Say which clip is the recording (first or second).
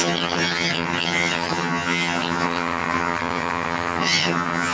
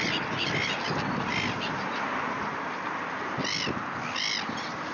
second